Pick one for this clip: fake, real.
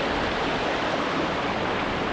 real